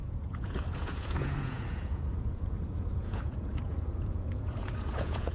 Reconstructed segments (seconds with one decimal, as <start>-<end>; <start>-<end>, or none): 0.0-5.3